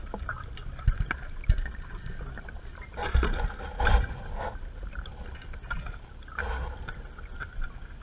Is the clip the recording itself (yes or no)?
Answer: yes